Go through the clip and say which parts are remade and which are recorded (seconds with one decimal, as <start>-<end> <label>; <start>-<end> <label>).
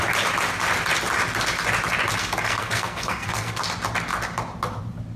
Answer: 0.0-2.2 recorded; 2.2-3.6 remade; 3.6-5.2 recorded